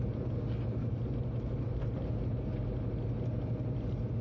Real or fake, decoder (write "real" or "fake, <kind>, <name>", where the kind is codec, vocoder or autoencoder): real